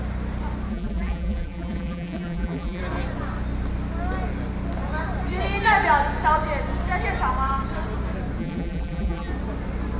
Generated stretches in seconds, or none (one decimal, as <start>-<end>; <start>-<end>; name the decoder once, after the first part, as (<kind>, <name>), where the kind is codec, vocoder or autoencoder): 0.7-2.8 (vocoder, BigVGAN v2); 8.4-9.3